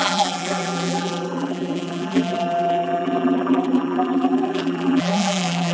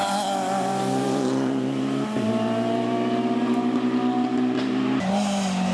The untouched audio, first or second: second